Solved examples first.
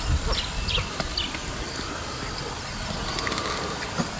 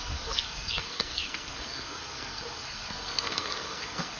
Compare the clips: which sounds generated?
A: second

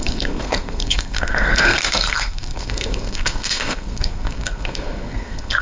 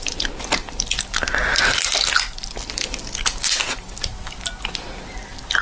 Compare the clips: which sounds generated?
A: first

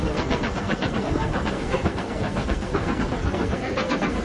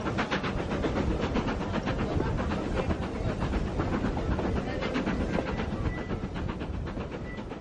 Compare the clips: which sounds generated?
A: first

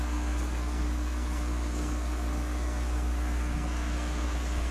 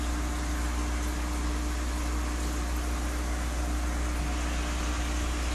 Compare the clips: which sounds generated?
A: first